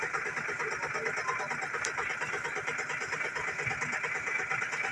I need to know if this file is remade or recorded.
recorded